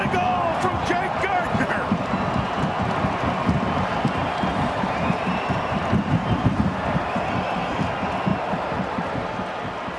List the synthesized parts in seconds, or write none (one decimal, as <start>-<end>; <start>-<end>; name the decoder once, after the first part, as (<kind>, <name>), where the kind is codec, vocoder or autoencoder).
4.2-7.2 (vocoder, BigVGAN v2); 8.3-9.1